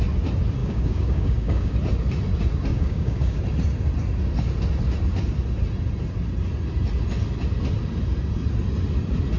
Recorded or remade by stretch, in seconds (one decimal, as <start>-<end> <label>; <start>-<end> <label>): 0.0-0.6 recorded; 0.6-1.7 remade; 1.7-2.7 recorded; 2.7-3.4 remade; 3.4-9.4 recorded